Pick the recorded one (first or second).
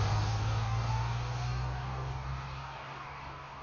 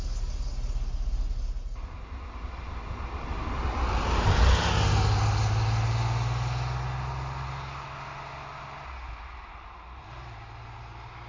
second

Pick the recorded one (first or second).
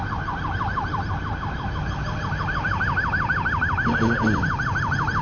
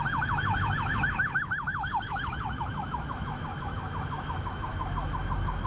first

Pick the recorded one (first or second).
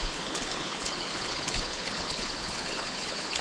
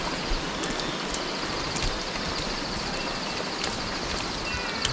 second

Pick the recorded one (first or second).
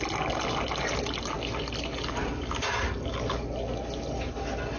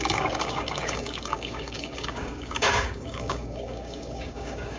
first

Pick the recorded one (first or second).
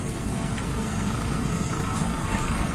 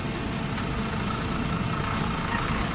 second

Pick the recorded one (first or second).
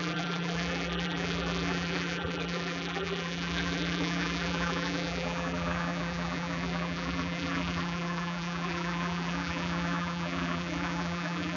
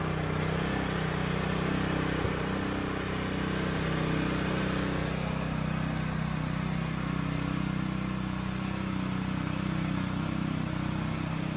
second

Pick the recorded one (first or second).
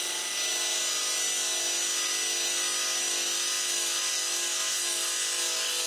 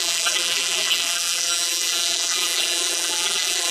first